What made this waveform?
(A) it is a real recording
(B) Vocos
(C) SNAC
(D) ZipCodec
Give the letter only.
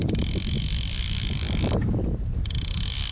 A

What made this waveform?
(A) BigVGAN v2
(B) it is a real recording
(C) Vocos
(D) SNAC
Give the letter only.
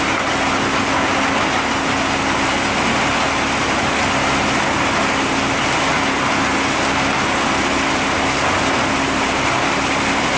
B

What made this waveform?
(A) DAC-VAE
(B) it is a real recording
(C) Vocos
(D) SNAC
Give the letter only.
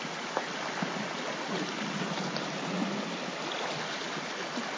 B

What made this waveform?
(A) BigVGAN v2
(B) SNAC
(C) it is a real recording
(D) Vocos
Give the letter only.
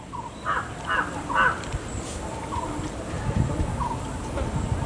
C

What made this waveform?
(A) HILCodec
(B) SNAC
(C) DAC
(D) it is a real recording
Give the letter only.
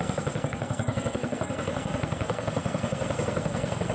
B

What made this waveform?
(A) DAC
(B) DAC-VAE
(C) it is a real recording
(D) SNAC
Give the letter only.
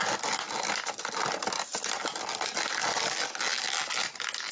C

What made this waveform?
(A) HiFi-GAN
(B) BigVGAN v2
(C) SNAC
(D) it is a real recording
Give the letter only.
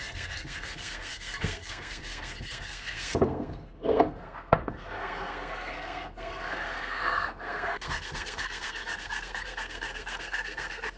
C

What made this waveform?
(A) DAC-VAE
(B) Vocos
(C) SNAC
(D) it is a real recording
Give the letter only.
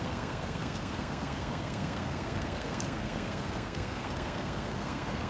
C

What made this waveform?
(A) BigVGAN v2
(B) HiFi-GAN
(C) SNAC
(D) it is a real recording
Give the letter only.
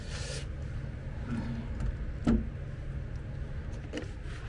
D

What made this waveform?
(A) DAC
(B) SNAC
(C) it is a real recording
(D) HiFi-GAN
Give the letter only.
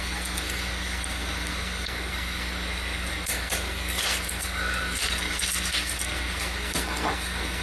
B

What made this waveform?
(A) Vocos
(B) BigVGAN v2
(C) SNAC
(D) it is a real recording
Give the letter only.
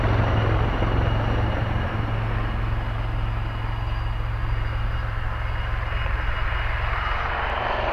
D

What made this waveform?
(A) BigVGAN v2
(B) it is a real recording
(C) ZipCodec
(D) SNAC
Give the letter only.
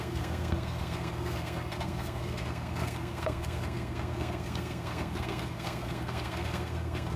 D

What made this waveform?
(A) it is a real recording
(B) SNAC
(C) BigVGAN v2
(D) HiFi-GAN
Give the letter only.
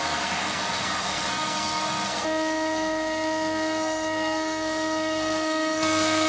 B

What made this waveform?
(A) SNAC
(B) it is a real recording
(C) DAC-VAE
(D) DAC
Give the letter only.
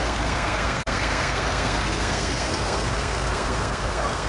A